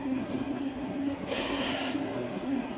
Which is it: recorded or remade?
remade